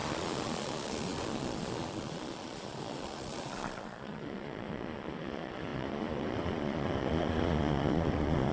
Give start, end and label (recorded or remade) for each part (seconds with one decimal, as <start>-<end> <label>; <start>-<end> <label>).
0.0-8.5 remade